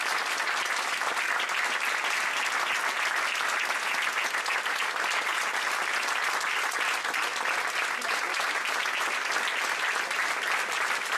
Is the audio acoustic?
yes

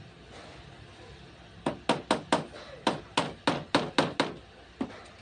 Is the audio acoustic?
yes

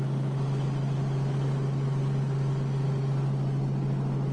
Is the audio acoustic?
yes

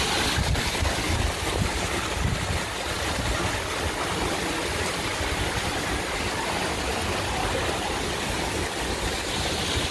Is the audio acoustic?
yes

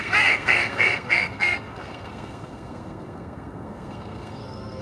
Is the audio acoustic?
no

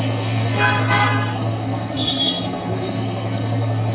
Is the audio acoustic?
no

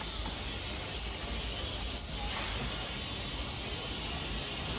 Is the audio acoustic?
yes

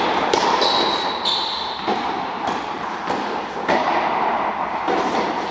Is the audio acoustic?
yes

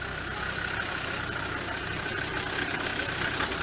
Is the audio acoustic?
yes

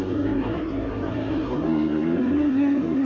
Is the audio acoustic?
no